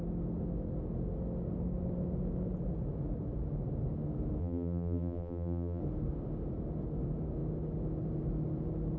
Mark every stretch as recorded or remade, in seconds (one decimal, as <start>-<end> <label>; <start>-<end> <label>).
0.0-4.4 recorded; 4.4-5.8 remade; 5.8-9.0 recorded